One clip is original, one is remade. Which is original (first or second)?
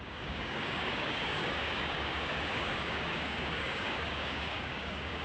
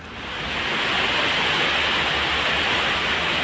second